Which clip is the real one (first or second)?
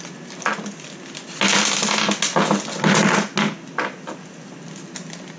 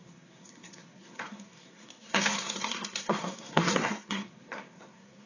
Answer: first